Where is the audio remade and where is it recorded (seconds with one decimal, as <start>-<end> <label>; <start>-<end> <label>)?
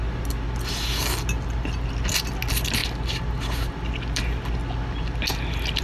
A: 0.0-5.8 recorded